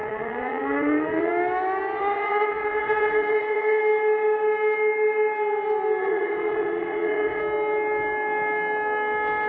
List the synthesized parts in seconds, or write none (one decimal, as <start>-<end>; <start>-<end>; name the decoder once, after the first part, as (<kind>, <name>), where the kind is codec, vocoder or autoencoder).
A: 0.0-1.3 (vocoder, WaveNeXt); 2.0-3.8; 6.0-7.4

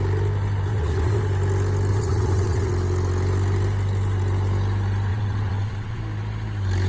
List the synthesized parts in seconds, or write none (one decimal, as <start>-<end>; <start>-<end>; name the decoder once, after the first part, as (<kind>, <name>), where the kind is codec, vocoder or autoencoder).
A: 0.7-1.2 (vocoder, WaveNeXt); 1.9-2.7; 5.1-6.0

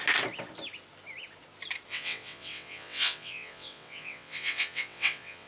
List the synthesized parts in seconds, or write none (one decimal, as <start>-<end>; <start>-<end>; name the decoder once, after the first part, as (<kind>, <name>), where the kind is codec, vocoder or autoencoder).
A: 1.9-5.5 (vocoder, WaveNeXt)

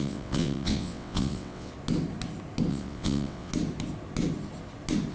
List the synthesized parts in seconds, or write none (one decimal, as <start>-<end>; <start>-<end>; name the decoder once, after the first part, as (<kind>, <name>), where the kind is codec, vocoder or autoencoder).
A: 0.0-1.7 (vocoder, WaveNeXt); 2.7-3.5

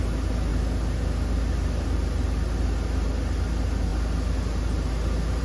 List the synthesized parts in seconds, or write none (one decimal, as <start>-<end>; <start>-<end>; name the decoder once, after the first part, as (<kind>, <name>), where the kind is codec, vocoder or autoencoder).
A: none

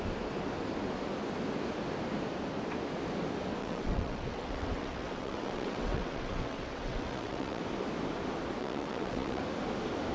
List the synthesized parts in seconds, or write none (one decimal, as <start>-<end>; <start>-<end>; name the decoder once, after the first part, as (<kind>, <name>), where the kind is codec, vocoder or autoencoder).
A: 3.6-7.6 (vocoder, WaveNeXt); 8.6-9.4

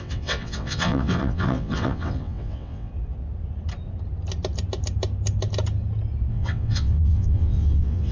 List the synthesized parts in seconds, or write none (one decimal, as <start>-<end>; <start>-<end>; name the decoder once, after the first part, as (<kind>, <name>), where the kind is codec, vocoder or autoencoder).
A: 0.0-2.9 (vocoder, WaveNeXt); 6.3-8.1

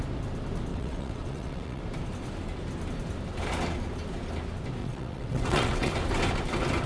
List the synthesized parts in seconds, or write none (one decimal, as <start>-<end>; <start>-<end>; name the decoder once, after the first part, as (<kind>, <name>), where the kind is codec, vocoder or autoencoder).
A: 0.7-1.8 (vocoder, WaveNeXt); 4.8-5.9